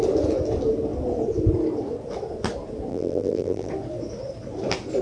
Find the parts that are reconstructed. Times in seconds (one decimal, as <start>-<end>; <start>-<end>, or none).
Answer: 2.9-3.7